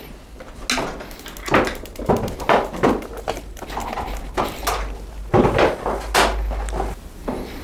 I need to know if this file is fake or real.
real